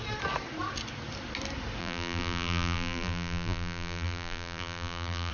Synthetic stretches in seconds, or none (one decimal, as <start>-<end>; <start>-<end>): 1.8-5.3